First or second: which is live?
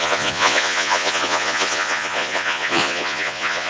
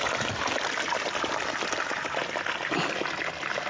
second